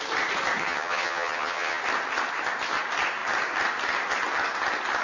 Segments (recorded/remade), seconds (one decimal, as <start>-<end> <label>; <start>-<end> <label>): 0.0-0.6 recorded; 0.6-1.8 remade; 1.8-5.0 recorded